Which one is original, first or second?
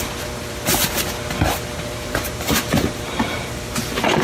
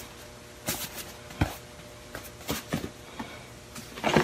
second